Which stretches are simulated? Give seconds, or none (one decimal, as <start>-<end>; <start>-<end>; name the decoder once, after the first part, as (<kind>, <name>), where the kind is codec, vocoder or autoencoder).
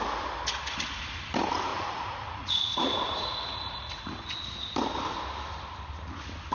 1.7-4.4 (vocoder, Vocos)